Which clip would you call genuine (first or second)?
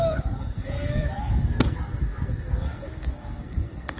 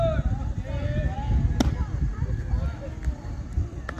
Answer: second